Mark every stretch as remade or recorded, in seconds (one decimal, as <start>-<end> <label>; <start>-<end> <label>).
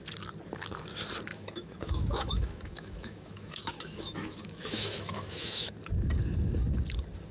0.0-1.3 recorded; 1.3-5.7 remade; 5.7-7.3 recorded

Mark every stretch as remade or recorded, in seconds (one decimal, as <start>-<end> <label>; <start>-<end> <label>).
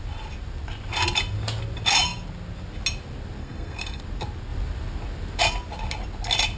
0.0-3.4 recorded; 3.4-4.0 remade; 4.0-6.6 recorded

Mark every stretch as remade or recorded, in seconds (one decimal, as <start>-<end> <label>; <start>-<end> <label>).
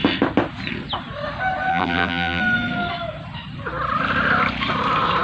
0.0-1.7 recorded; 1.7-2.4 remade; 2.4-5.2 recorded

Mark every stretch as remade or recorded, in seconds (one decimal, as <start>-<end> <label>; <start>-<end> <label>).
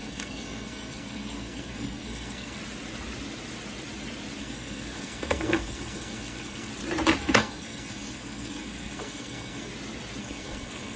0.0-2.6 remade; 2.6-4.4 recorded; 4.4-6.7 remade; 6.7-7.2 recorded; 7.2-9.7 remade; 9.7-10.2 recorded; 10.2-11.0 remade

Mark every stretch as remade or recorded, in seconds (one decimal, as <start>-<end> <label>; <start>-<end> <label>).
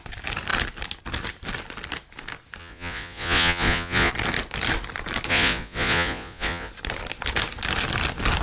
0.0-2.6 recorded; 2.6-4.1 remade; 4.1-5.3 recorded; 5.3-6.7 remade; 6.7-8.4 recorded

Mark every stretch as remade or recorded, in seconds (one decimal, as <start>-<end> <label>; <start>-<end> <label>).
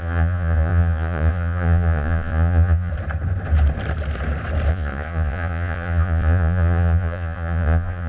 0.0-2.9 remade; 2.9-4.7 recorded; 4.7-8.1 remade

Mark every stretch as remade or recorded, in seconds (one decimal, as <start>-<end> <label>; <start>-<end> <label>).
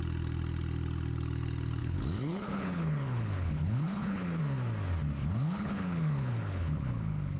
0.0-1.8 recorded; 1.8-4.4 remade; 4.4-5.2 recorded; 5.2-7.4 remade